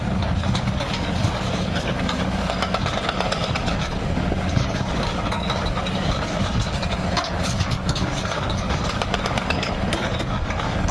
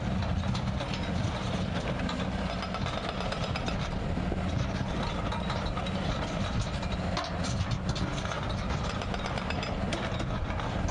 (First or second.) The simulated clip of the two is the first